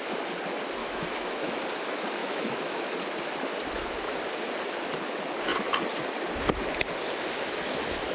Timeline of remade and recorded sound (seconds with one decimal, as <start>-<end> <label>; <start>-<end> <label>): 0.0-0.8 recorded; 0.8-1.6 remade; 1.6-2.2 recorded; 2.2-2.9 remade; 2.9-8.1 recorded